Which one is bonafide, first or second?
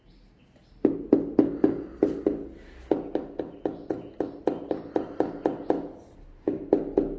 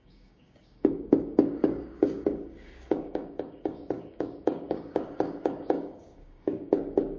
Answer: first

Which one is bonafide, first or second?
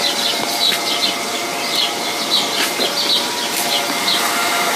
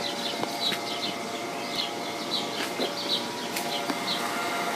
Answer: second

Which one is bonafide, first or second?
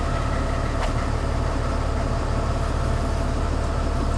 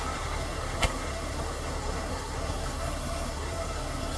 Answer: first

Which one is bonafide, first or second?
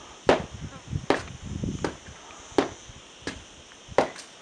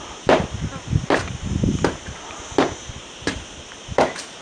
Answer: first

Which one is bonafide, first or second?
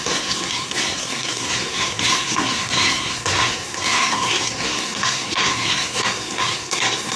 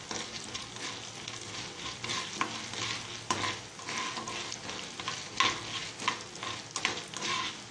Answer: second